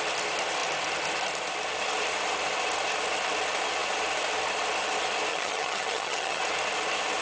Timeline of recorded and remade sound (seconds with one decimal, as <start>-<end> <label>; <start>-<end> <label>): 0.0-5.3 recorded; 5.3-6.4 remade; 6.4-7.2 recorded